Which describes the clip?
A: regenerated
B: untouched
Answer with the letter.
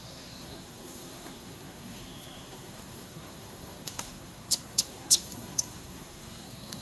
A